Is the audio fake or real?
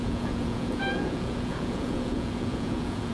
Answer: fake